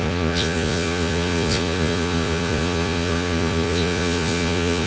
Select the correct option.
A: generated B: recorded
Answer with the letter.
A